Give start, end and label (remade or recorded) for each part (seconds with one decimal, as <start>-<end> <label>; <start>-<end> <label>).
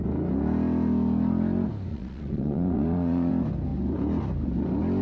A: 0.0-1.9 recorded; 1.9-3.3 remade; 3.3-5.0 recorded